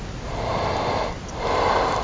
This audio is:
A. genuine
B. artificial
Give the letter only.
A